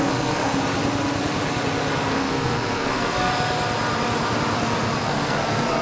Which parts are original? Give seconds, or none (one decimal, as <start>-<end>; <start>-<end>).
0.5-2.1; 3.3-5.0